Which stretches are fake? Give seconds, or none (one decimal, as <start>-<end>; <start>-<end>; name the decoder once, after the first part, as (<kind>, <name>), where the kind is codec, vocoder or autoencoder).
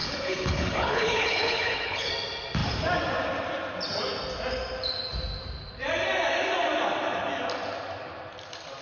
0.0-2.1 (codec, HILCodec)